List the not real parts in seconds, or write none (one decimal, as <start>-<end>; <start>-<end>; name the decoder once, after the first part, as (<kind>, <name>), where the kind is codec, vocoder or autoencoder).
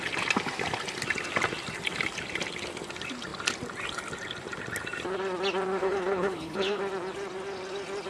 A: 5.8-6.8 (codec, HILCodec)